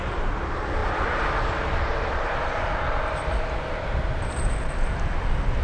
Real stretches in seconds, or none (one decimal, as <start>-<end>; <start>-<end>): 0.0-5.6